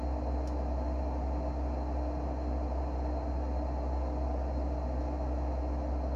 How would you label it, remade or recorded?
recorded